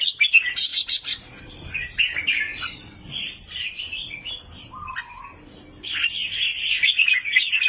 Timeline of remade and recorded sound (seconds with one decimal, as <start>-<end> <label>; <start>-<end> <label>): 0.0-0.7 recorded; 0.7-2.0 remade; 2.0-2.5 recorded; 2.5-4.4 remade; 4.4-7.7 recorded